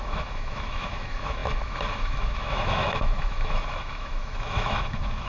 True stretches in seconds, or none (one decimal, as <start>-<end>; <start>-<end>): none